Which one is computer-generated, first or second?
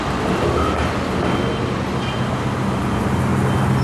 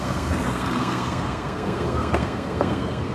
second